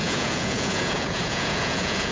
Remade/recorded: remade